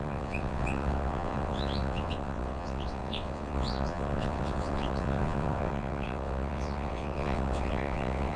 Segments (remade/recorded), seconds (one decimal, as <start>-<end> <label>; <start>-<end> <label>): 0.0-8.4 remade